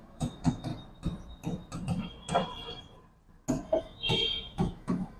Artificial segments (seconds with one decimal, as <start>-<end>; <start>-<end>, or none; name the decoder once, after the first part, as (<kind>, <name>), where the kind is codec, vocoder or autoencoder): 0.0-0.7 (autoencoder, DAC-VAE); 3.8-5.2